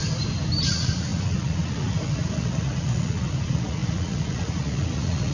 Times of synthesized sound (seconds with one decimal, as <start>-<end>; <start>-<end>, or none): 0.7-5.3